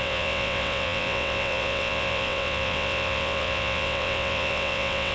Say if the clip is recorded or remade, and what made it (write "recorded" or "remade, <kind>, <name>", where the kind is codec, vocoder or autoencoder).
remade, vocoder, WaveNeXt